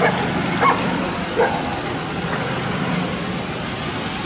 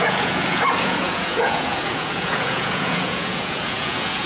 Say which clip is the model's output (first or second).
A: second